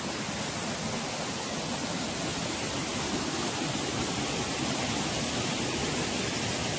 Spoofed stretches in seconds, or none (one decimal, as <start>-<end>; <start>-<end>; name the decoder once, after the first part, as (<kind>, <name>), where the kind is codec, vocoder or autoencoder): none

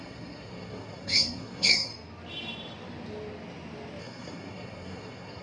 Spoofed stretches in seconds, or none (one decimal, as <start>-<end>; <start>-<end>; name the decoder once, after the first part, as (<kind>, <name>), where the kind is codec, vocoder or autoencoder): 0.0-1.9 (codec, SNAC); 4.0-5.4

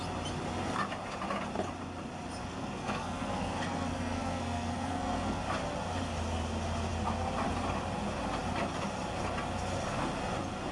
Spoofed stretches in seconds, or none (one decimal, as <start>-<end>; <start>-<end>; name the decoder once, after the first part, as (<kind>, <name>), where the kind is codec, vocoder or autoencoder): 2.4-5.4 (codec, SNAC)

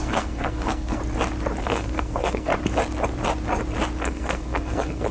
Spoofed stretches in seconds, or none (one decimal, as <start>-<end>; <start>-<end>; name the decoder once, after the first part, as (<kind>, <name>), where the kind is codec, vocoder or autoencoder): 0.0-1.0 (codec, SNAC); 1.6-2.5; 4.0-5.1